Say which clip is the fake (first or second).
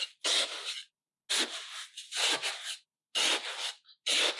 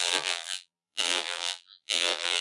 second